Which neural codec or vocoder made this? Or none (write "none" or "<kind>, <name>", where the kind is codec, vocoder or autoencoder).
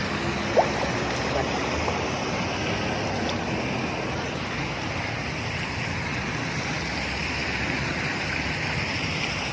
none